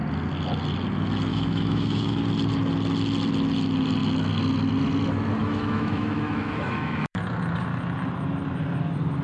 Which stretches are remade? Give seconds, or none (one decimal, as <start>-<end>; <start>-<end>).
1.3-2.2; 5.4-7.2